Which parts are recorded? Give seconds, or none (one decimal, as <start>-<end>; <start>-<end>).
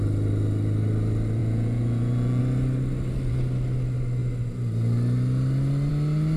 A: 0.0-1.4; 2.4-6.4